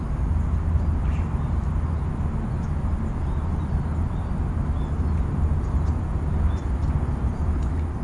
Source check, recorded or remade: recorded